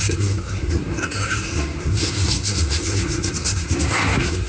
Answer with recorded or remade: remade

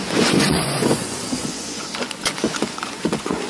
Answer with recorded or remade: remade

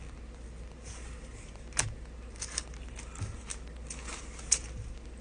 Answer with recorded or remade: recorded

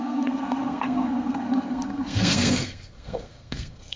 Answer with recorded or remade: remade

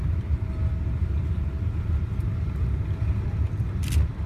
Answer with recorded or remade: recorded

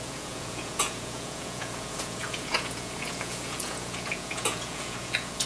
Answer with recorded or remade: remade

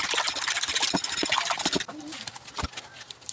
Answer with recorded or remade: recorded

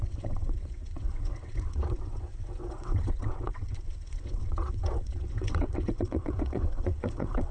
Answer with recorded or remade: remade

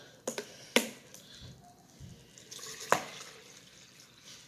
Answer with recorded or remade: recorded